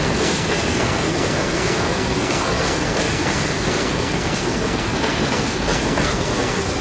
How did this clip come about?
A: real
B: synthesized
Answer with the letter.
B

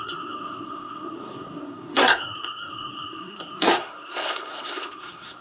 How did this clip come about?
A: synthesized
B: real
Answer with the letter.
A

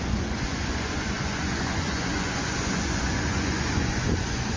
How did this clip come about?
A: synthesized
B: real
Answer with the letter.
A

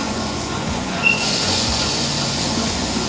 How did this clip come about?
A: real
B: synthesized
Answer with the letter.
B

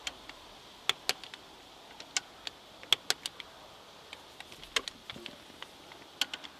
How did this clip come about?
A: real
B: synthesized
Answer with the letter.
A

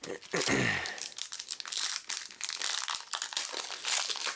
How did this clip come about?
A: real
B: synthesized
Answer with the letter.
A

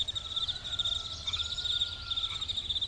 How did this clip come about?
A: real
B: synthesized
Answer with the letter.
A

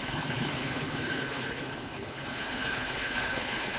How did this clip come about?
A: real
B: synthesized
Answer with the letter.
B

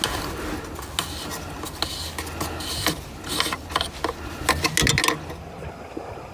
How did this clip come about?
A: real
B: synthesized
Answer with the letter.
A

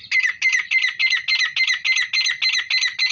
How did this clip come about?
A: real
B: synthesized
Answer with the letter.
A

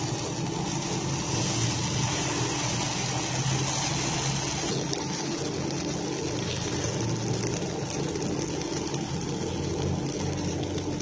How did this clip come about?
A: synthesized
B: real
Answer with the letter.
B